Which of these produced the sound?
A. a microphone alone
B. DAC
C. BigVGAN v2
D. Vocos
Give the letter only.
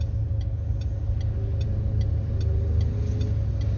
A